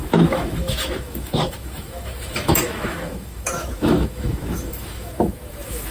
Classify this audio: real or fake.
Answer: fake